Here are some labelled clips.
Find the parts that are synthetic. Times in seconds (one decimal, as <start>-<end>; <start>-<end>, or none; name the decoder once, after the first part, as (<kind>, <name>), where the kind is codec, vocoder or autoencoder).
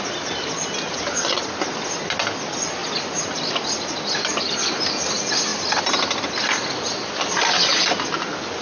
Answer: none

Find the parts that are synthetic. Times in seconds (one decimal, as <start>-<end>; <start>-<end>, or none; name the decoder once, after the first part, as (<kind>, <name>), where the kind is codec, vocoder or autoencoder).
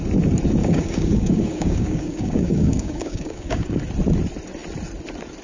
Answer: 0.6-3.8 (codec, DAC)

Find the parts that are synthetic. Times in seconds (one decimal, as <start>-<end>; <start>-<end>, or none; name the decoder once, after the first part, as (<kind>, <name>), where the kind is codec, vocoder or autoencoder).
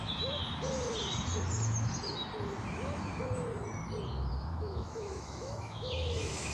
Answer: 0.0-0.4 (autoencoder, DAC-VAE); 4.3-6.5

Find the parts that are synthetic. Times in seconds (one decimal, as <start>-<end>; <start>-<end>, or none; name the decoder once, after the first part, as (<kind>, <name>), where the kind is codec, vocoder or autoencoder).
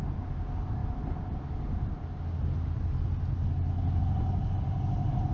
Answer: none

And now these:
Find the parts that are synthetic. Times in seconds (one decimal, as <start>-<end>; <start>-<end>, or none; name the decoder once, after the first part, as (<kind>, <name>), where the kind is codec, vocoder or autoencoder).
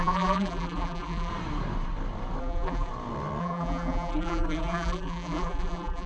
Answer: 0.0-1.3 (vocoder, BigVGAN v2); 2.4-2.9; 3.4-6.1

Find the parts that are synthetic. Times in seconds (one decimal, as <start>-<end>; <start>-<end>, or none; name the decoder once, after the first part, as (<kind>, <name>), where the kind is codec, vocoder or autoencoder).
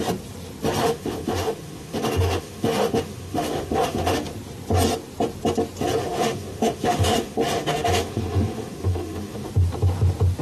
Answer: 0.8-4.3 (autoencoder, DAC-VAE); 6.0-9.5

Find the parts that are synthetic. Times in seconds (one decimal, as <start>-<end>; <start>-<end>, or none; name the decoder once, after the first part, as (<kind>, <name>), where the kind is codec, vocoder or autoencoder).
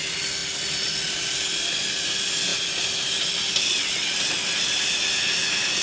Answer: none